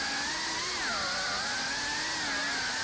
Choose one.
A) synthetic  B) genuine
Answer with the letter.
B